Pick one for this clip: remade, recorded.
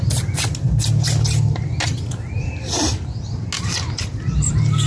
recorded